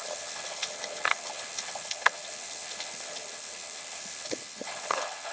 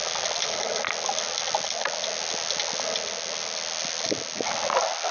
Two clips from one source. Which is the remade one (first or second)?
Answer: first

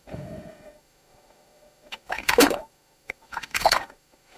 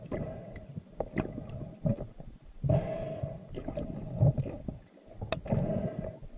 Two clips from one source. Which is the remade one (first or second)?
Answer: first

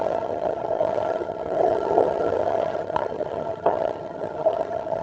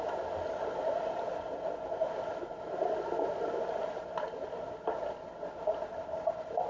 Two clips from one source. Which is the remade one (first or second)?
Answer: first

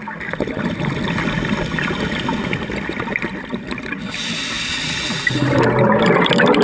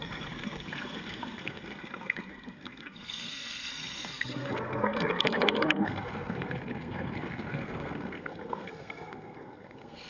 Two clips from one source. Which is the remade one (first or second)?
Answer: second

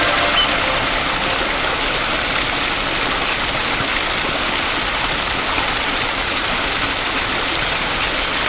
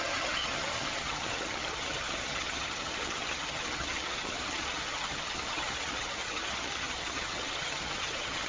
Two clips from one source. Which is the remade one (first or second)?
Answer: second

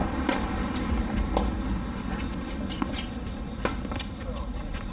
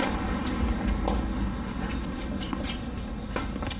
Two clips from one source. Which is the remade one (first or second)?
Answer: first